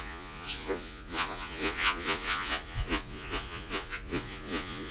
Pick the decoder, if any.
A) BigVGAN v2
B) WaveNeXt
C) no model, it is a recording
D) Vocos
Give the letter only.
D